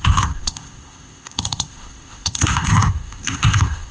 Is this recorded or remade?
remade